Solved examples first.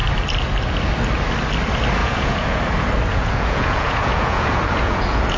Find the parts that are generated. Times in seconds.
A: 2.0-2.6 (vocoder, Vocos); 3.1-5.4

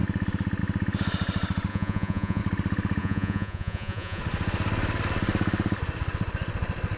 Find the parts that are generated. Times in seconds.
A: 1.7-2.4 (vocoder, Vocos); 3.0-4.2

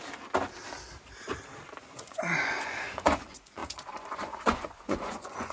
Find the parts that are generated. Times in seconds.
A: 1.8-5.5 (vocoder, Vocos)

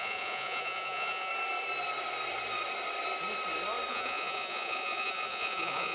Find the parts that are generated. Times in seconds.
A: 0.0-1.3 (vocoder, Vocos); 3.9-5.9

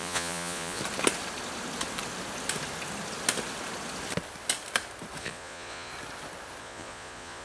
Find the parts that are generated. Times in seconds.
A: 0.0-0.8 (vocoder, Vocos); 5.2-5.9; 6.6-7.4

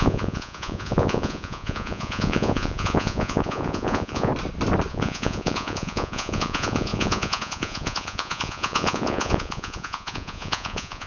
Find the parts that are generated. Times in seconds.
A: 0.0-4.3 (vocoder, Vocos); 4.9-11.1

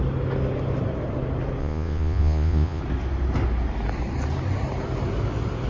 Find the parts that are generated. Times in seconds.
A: 1.6-2.8 (vocoder, Vocos)

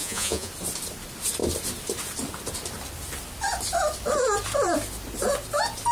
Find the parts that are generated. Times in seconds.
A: 0.0-0.5 (vocoder, Vocos)